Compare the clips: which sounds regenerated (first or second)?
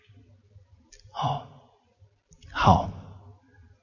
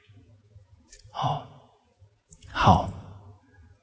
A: second